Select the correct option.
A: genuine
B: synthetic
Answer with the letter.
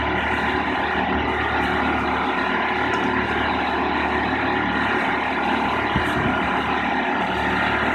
A